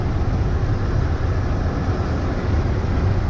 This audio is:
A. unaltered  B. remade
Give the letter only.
A